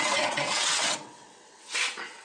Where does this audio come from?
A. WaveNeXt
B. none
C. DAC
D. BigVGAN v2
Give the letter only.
A